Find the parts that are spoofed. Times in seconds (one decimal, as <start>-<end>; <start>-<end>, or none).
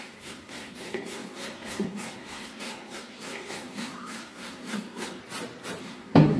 0.0-5.2; 5.8-6.4